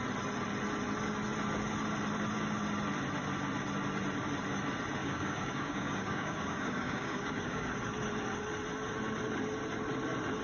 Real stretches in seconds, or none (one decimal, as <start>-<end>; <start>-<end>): 0.0-5.0; 7.7-10.4